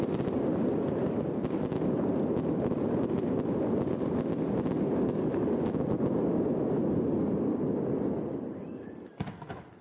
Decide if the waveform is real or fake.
real